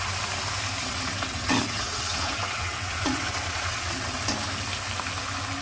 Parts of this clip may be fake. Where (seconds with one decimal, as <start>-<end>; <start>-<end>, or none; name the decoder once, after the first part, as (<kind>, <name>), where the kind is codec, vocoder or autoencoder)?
0.8-4.2 (vocoder, WaveNeXt)